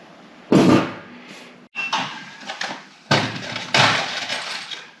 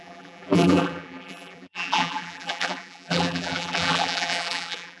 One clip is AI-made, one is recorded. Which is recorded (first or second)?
first